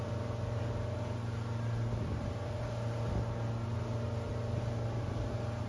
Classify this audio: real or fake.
real